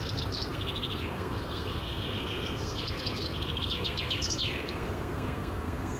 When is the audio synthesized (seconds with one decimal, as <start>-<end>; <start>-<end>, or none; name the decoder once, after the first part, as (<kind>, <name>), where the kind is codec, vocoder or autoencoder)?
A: 0.0-6.0 (codec, SNAC)